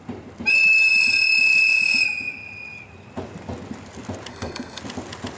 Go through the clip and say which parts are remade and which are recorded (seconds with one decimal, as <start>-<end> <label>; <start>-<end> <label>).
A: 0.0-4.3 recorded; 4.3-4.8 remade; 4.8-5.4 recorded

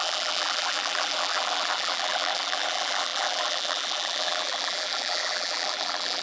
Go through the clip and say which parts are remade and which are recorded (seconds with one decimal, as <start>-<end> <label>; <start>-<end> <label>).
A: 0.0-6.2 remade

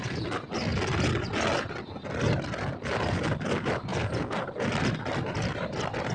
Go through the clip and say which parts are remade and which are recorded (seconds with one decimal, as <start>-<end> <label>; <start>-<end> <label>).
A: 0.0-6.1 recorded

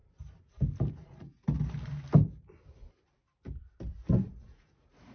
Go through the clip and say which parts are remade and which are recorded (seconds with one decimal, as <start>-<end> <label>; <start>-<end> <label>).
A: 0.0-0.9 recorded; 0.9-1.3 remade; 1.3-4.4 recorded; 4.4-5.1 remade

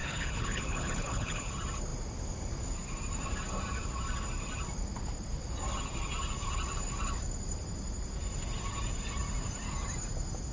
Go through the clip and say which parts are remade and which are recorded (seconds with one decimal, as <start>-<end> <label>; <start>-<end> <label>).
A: 0.0-1.5 remade; 1.5-10.5 recorded